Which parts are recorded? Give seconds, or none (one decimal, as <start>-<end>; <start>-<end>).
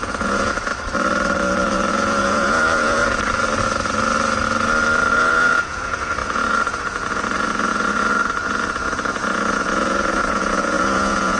0.7-1.9; 3.0-5.1